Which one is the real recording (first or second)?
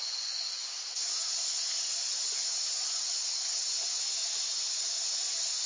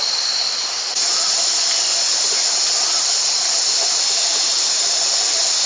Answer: second